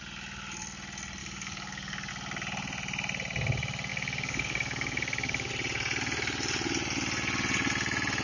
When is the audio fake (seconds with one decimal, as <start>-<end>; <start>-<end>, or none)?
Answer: 1.2-2.1; 3.9-5.5